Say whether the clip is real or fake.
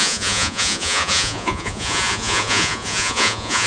fake